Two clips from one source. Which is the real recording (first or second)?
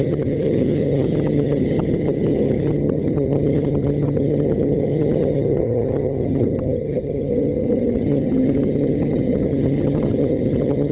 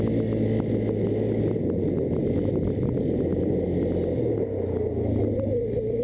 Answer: second